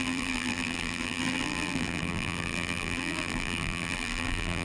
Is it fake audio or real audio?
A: fake